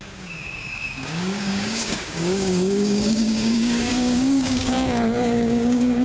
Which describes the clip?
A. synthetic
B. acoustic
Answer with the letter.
A